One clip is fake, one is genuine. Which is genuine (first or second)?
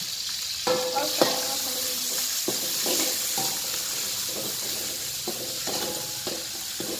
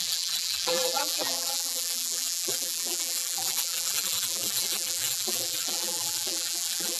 first